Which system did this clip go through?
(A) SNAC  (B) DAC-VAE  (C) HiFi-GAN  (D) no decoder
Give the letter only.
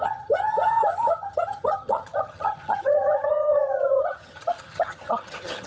C